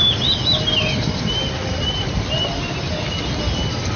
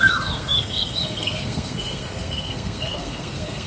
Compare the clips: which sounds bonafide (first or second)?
first